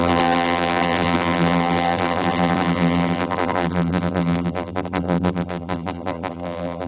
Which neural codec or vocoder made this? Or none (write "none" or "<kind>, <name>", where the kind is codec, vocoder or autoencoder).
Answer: vocoder, BigVGAN v2